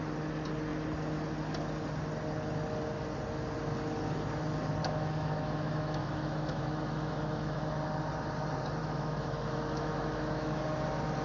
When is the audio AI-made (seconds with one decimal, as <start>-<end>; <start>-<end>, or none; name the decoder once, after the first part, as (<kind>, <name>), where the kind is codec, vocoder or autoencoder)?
4.8-7.8 (autoencoder, DAC-VAE); 8.8-10.6